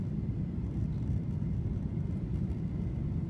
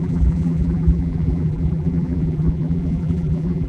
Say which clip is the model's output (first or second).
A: second